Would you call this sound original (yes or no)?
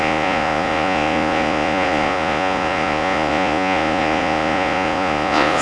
no